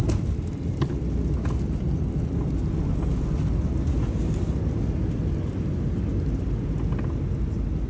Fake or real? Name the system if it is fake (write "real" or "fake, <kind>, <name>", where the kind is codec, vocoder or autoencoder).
real